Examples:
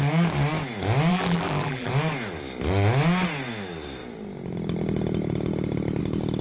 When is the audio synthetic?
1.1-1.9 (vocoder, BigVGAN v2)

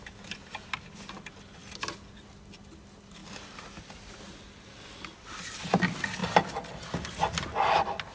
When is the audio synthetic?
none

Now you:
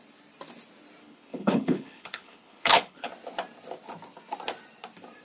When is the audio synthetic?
1.0-3.1 (codec, HILCodec)

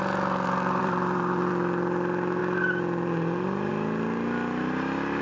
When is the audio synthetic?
0.8-1.5 (vocoder, BigVGAN v2)

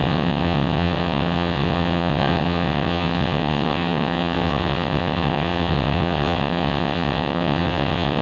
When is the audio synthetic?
0.0-8.2 (vocoder, WaveNeXt)

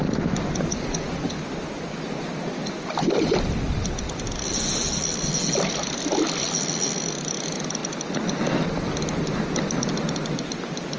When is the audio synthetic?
none

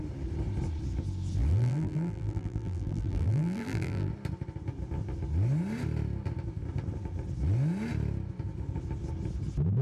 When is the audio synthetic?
1.5-4.1 (vocoder, BigVGAN v2)